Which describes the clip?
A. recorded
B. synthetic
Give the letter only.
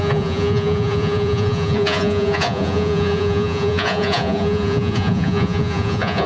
B